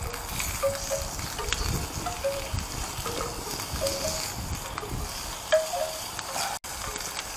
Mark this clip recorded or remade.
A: recorded